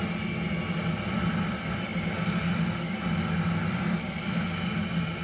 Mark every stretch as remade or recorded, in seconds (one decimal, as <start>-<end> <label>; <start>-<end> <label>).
0.0-5.2 recorded